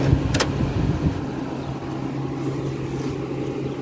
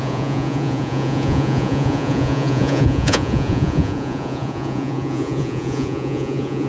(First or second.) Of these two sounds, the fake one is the second